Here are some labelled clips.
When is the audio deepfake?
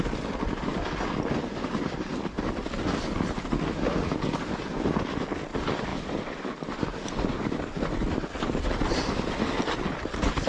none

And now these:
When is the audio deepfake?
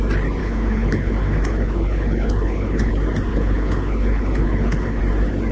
0.4-2.9; 3.3-5.0